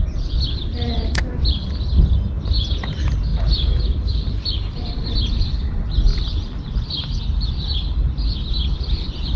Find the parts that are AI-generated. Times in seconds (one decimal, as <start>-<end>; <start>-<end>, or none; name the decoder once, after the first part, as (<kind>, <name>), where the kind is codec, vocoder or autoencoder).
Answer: 3.3-5.0 (vocoder, BigVGAN v2)